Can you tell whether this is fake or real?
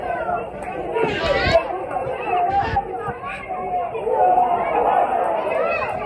real